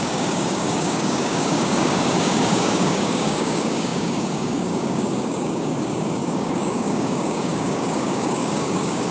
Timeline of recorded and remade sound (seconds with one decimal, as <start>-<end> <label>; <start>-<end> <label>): 0.0-9.1 remade